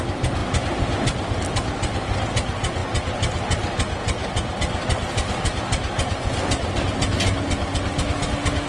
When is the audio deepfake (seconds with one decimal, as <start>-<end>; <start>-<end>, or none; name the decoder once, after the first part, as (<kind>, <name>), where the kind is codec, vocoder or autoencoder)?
none